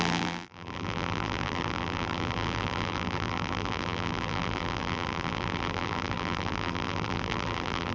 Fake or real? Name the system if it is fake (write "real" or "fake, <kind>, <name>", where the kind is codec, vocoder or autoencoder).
fake, vocoder, BigVGAN v2